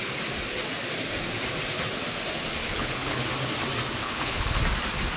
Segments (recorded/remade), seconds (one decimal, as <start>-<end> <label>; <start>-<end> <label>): 0.0-2.6 recorded; 2.6-3.2 remade; 3.2-4.0 recorded; 4.0-4.6 remade; 4.6-5.2 recorded